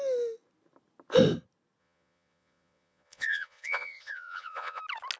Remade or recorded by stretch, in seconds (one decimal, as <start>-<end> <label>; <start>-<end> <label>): 0.0-1.8 recorded; 1.8-4.8 remade; 4.8-5.2 recorded